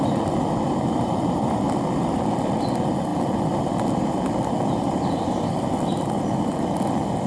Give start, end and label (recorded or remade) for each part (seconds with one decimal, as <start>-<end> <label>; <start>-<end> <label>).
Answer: 0.0-7.3 recorded